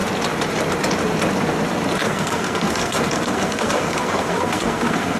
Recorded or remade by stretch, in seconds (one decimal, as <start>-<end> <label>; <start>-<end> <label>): 0.0-2.0 recorded; 2.0-5.2 remade